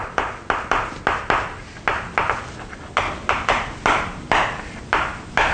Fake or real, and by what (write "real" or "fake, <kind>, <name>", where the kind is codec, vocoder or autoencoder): real